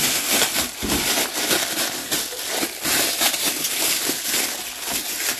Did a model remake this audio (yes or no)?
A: no